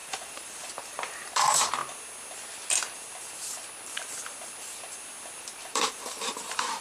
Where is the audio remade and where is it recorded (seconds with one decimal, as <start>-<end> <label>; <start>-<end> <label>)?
0.0-1.8 remade; 1.8-5.4 recorded; 5.4-6.8 remade